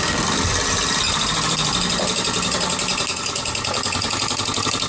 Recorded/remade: recorded